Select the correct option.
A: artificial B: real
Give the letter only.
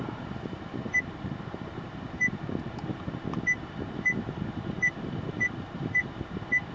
A